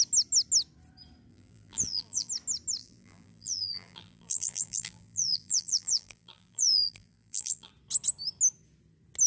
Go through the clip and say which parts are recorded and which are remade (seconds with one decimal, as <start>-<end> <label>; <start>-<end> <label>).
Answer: 0.0-1.3 recorded; 1.3-2.3 remade; 2.3-2.8 recorded; 2.8-7.7 remade; 7.7-9.3 recorded